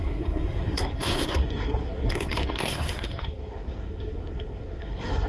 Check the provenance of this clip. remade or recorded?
remade